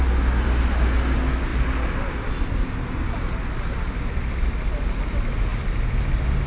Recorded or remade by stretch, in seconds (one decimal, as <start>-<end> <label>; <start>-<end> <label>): 0.0-5.5 recorded; 5.5-6.1 remade; 6.1-6.5 recorded